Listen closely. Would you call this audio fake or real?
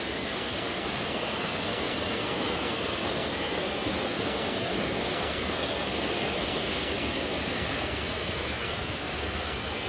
fake